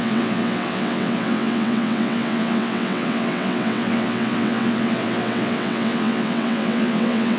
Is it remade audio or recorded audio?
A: remade